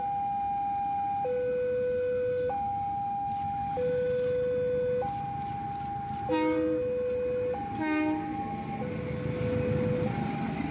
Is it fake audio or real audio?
real